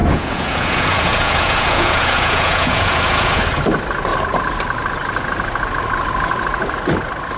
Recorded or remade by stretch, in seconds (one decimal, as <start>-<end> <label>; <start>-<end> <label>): 0.0-3.4 remade; 3.4-7.4 recorded